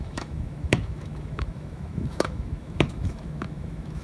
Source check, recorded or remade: remade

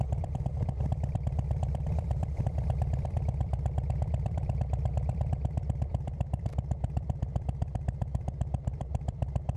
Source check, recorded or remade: remade